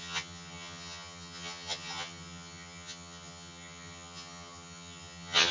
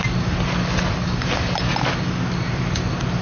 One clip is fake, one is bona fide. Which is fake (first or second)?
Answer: first